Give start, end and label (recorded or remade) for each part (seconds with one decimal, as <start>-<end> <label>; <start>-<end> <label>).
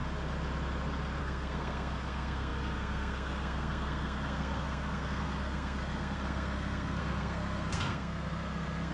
0.0-1.2 recorded; 1.2-8.9 remade